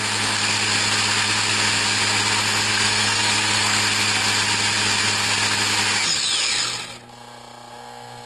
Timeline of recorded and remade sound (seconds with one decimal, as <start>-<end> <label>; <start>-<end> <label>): 0.0-2.7 recorded; 2.7-3.8 remade; 3.8-8.3 recorded